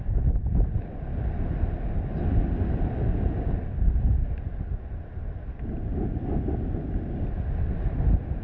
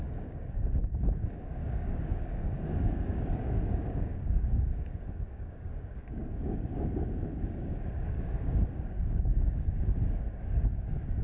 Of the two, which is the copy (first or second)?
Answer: second